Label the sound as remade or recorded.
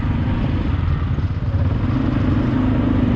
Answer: recorded